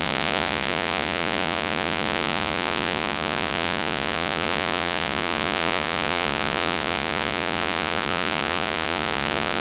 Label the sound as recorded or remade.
remade